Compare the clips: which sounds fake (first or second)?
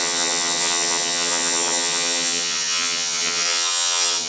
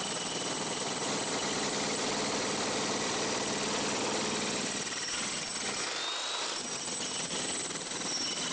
first